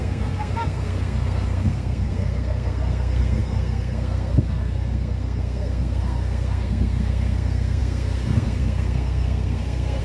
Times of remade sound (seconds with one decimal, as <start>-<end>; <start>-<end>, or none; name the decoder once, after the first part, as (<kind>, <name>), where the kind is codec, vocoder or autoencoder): 0.0-10.0 (codec, SNAC)